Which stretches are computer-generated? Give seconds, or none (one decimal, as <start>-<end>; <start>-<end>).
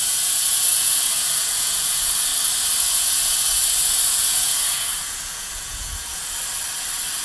0.0-2.3; 2.8-6.2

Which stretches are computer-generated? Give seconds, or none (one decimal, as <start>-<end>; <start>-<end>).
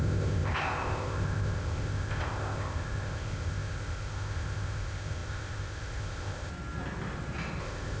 0.0-6.5; 7.6-8.0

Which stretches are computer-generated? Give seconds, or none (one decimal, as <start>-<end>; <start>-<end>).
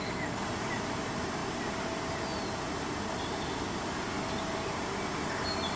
none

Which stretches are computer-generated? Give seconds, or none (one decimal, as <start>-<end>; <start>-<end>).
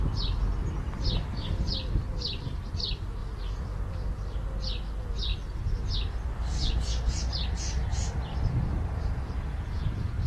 3.2-3.9; 5.3-10.3